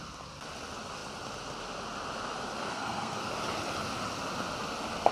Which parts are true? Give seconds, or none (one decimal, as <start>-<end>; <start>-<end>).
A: 0.0-2.7; 3.3-5.1